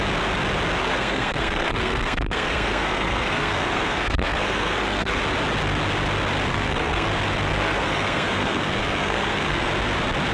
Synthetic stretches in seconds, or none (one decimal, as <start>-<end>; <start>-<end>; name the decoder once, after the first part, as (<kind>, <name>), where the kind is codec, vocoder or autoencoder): 0.8-5.2 (codec, SNAC); 6.5-7.1; 7.5-9.7